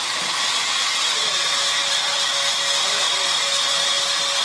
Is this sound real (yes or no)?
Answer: yes